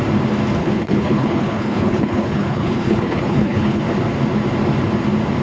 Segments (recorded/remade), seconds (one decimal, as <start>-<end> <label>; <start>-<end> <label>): 0.0-0.6 recorded; 0.6-3.8 remade; 3.8-5.4 recorded